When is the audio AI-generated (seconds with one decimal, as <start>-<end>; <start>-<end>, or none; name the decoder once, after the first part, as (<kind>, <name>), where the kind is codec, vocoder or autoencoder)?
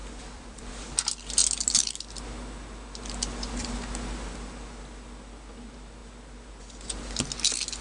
0.0-0.7 (vocoder, BigVGAN v2)